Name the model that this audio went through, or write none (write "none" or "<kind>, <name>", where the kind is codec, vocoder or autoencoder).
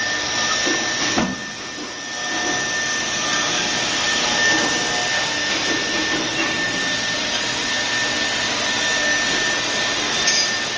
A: none